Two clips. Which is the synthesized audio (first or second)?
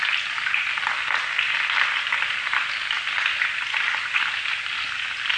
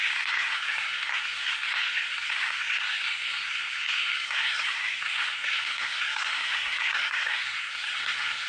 second